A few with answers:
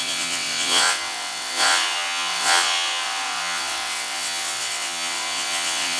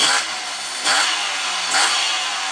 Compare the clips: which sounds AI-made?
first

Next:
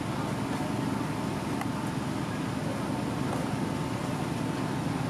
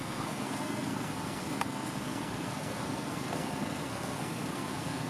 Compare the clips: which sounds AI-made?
second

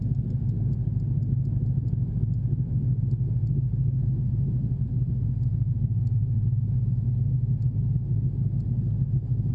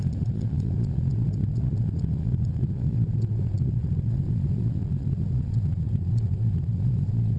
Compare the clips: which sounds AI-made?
second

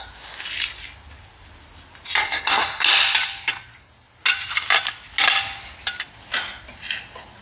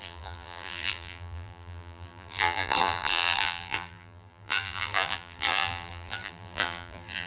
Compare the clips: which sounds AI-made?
second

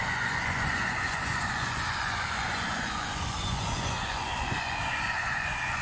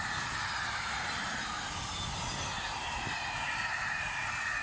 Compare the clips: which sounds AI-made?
first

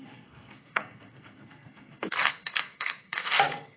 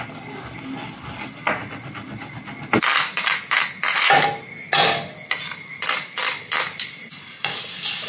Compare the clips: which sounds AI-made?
first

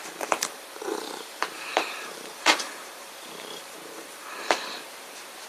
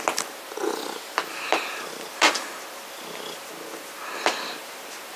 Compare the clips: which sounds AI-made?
first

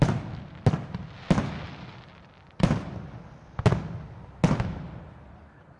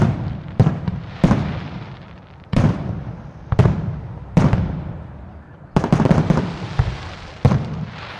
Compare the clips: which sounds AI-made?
second